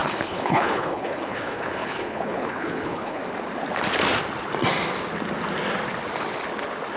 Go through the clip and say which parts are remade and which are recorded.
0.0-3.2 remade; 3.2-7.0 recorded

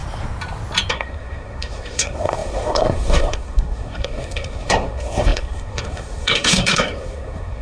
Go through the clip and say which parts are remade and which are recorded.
0.0-0.9 recorded; 0.9-7.6 remade

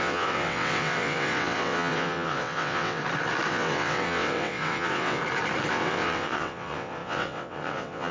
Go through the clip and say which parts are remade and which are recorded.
0.0-3.0 remade; 3.0-3.5 recorded; 3.5-5.2 remade; 5.2-5.7 recorded; 5.7-8.1 remade

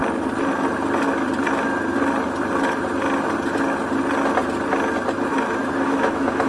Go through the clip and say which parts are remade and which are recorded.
0.0-5.3 recorded; 5.3-6.5 remade

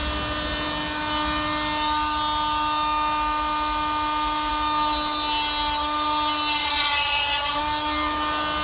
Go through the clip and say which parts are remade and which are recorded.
0.0-6.6 recorded; 6.6-7.6 remade; 7.6-8.6 recorded

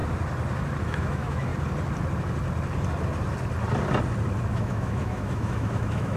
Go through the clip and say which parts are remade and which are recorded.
0.0-0.8 recorded; 0.8-1.5 remade; 1.5-4.5 recorded; 4.5-6.2 remade

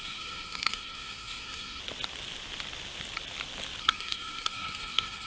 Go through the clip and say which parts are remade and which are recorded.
0.0-1.8 remade; 1.8-3.8 recorded; 3.8-5.3 remade

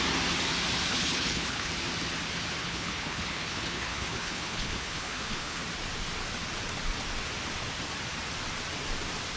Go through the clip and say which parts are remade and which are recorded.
0.0-0.9 recorded; 0.9-1.7 remade; 1.7-2.6 recorded; 2.6-5.6 remade; 5.6-9.4 recorded